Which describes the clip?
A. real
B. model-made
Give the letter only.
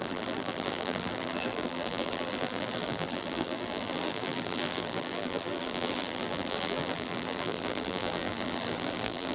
B